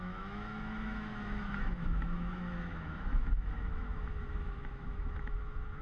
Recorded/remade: remade